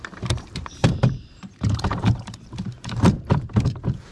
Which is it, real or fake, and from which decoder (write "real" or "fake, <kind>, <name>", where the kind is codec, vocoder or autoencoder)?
fake, vocoder, BigVGAN v2